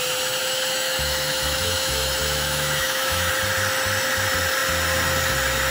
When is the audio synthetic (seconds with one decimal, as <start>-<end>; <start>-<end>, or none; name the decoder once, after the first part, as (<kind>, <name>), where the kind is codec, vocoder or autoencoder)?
0.4-3.3 (autoencoder, DAC-VAE)